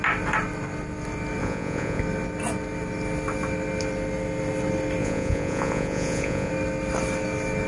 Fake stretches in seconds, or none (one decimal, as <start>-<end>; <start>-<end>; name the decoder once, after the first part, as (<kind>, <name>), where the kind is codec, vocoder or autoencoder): 1.4-2.0 (vocoder, Vocos); 5.0-6.5